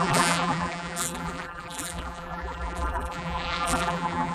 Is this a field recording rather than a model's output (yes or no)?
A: no